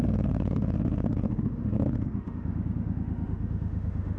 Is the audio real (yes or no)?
no